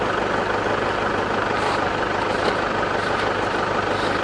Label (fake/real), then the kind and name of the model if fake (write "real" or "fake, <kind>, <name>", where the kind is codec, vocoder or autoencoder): real